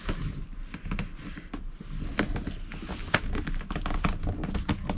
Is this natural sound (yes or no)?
yes